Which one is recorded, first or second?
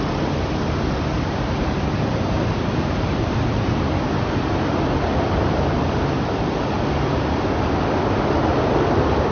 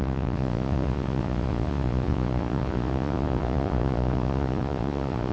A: first